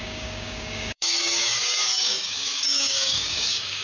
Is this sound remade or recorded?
remade